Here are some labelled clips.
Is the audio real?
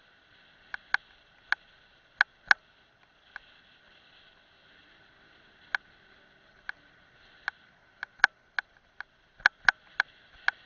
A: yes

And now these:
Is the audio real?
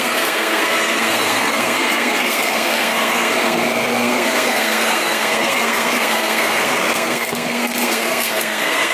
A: no